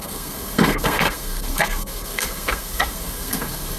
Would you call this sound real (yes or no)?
no